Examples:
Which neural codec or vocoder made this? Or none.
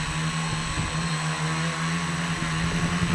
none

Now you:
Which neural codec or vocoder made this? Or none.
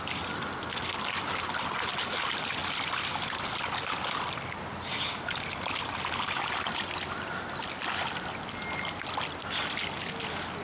none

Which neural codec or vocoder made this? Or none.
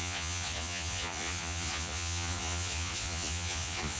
vocoder, Vocos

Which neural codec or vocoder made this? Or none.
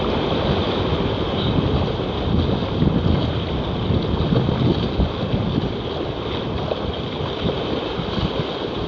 none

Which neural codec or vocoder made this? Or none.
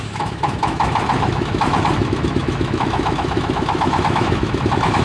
autoencoder, DAC-VAE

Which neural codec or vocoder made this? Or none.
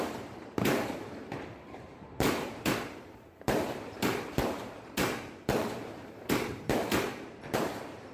vocoder, BigVGAN v2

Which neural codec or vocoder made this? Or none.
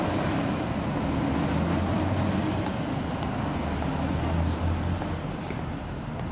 none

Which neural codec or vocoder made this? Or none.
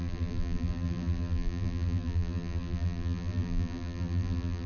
vocoder, BigVGAN v2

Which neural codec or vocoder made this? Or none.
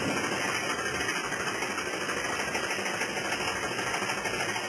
none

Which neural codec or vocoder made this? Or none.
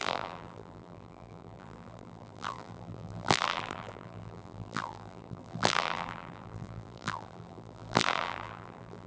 vocoder, BigVGAN v2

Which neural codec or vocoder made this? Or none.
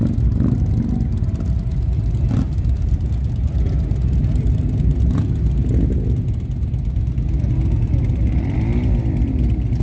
none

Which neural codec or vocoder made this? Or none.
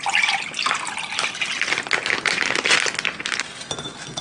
none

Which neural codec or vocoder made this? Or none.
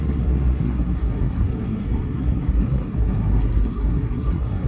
codec, SNAC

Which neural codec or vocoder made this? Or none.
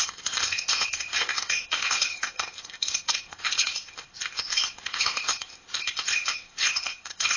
codec, ZipCodec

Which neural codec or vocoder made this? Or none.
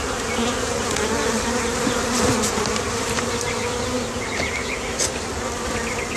none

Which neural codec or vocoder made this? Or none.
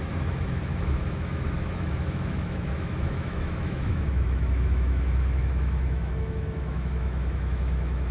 autoencoder, DAC-VAE